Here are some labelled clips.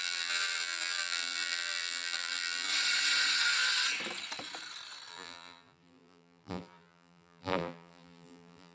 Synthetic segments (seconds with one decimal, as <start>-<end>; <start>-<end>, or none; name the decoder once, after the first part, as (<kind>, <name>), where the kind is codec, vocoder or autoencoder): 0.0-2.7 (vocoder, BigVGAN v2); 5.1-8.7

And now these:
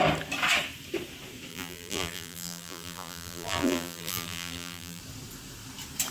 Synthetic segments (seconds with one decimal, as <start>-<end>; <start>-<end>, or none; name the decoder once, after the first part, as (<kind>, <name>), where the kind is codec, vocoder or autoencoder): 1.5-5.0 (vocoder, BigVGAN v2)

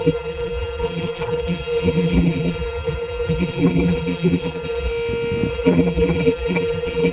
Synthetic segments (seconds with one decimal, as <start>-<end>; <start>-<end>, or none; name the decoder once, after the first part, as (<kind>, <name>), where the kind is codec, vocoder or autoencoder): 0.0-4.9 (vocoder, BigVGAN v2); 5.5-7.1

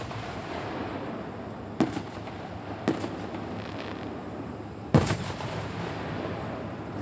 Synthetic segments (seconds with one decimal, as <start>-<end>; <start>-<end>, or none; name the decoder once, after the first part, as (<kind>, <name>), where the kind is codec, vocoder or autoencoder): 4.2-5.8 (vocoder, BigVGAN v2)

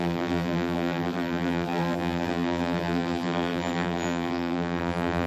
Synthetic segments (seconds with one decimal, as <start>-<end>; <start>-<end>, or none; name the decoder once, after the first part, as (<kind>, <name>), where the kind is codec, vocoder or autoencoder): 0.0-5.3 (vocoder, BigVGAN v2)

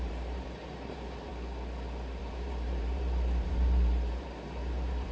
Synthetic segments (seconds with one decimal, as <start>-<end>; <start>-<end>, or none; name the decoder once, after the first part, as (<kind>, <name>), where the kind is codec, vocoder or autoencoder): 0.0-1.3 (vocoder, BigVGAN v2); 2.2-5.1

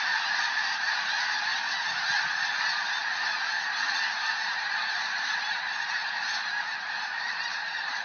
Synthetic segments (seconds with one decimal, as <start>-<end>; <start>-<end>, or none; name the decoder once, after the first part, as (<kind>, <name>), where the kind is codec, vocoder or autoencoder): 0.0-1.5 (vocoder, BigVGAN v2); 3.8-8.0